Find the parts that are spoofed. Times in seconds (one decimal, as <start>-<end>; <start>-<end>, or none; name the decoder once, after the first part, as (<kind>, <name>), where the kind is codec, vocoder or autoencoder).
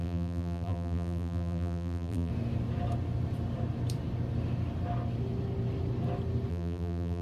0.0-2.3 (vocoder, BigVGAN v2); 6.5-7.2